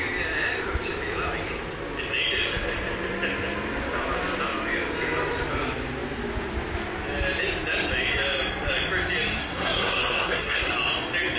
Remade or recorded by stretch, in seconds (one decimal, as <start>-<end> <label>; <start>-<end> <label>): 0.0-9.4 recorded; 9.4-10.7 remade; 10.7-11.4 recorded